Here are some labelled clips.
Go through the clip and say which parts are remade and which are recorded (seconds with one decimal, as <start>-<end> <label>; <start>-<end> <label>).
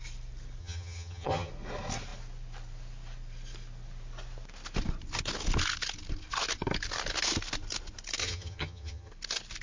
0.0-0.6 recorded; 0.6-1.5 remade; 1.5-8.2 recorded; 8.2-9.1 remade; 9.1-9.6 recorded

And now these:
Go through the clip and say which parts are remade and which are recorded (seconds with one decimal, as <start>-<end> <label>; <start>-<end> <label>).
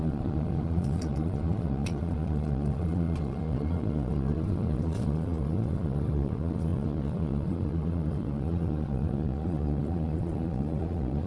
0.0-11.3 remade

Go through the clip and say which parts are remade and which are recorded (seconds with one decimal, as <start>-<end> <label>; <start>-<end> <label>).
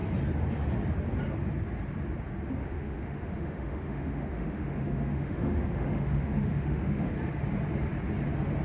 0.0-2.6 recorded; 2.6-7.1 remade; 7.1-8.6 recorded